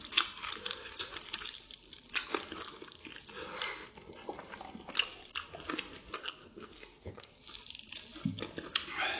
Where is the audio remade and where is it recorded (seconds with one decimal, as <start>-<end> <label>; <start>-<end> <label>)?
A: 0.0-6.2 recorded; 6.2-7.4 remade; 7.4-9.2 recorded